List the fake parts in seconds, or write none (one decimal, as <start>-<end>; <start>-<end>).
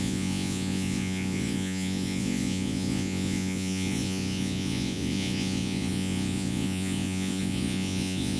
0.0-8.4